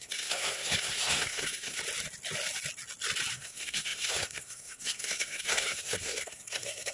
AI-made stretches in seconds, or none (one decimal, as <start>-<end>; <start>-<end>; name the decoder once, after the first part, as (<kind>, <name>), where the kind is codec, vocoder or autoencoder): 0.0-1.8 (codec, SNAC); 3.3-6.9